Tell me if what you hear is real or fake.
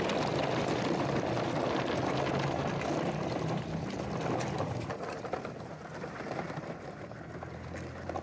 real